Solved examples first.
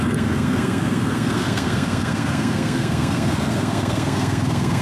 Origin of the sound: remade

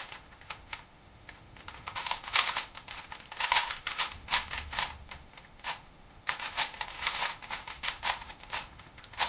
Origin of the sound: remade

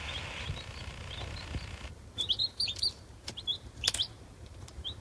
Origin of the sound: remade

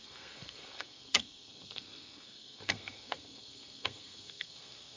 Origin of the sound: remade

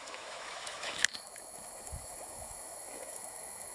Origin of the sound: remade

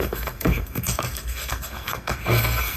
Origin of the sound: remade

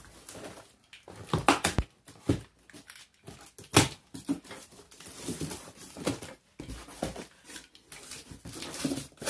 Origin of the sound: recorded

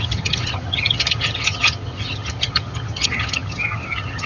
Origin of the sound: remade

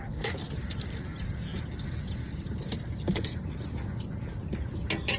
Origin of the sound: recorded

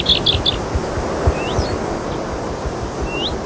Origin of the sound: recorded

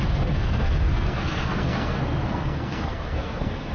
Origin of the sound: remade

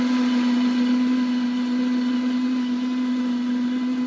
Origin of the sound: recorded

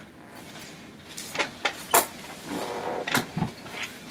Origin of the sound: recorded